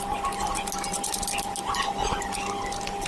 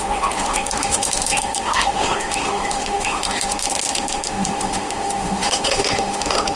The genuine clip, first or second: first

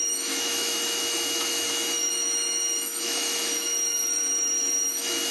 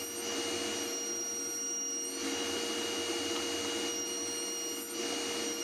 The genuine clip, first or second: second